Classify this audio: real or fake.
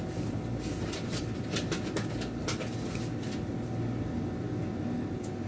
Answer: real